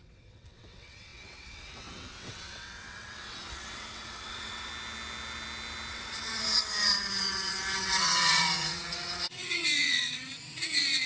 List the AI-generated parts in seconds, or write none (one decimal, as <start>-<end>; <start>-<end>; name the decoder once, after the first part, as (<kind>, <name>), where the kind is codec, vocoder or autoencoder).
0.0-4.7 (vocoder, WaveNeXt); 5.9-11.1